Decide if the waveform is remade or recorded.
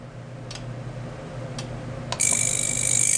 recorded